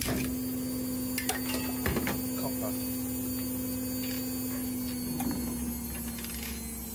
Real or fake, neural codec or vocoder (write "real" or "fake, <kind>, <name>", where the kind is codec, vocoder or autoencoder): real